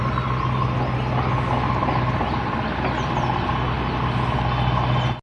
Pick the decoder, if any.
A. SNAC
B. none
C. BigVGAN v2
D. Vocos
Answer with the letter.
B